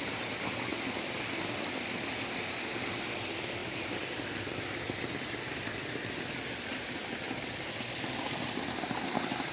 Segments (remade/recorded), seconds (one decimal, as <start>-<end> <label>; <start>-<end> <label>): 0.0-9.5 recorded

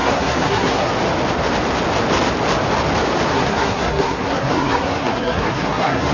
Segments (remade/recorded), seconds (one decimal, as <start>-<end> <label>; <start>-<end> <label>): 0.0-0.9 remade; 0.9-3.3 recorded; 3.3-6.1 remade

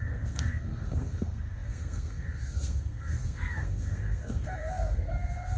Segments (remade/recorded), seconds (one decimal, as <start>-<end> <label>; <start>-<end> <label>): 0.0-5.6 remade

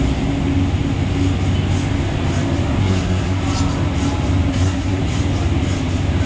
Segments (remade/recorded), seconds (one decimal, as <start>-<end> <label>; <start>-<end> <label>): 0.0-2.8 recorded; 2.8-3.4 remade; 3.4-4.5 recorded; 4.5-5.0 remade; 5.0-6.3 recorded

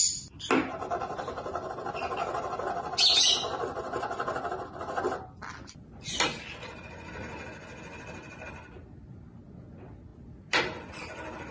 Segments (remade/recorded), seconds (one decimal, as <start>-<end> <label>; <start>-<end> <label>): 0.0-11.5 recorded

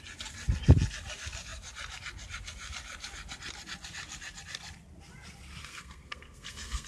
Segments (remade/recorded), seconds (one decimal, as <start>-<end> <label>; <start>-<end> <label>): 0.0-5.6 recorded; 5.6-6.9 remade

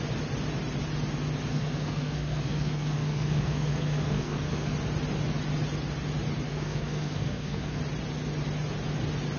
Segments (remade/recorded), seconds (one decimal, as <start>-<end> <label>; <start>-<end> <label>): 0.0-1.5 recorded; 1.5-4.7 remade; 4.7-6.5 recorded; 6.5-7.8 remade; 7.8-9.4 recorded